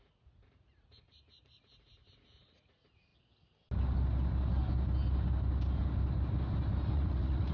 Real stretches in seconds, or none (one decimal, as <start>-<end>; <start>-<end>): 3.1-6.9